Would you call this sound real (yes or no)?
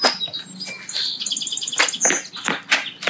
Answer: yes